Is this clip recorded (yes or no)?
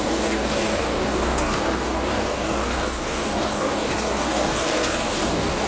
no